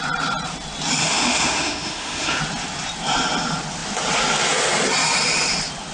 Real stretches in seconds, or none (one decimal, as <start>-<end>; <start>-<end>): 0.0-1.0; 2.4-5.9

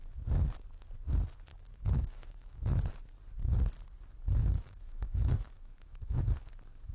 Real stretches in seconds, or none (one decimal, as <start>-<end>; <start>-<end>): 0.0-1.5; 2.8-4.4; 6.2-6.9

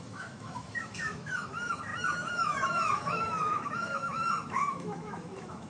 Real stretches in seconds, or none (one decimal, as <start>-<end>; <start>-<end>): none